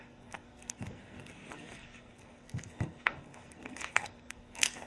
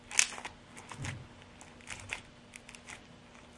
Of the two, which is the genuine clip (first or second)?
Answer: second